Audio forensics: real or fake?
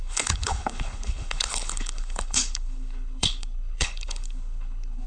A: fake